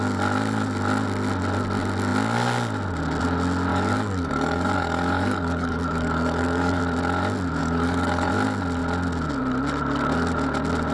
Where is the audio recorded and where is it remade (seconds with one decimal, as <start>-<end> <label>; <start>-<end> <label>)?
0.0-3.7 recorded; 3.7-6.8 remade; 6.8-7.6 recorded; 7.6-8.3 remade; 8.3-10.9 recorded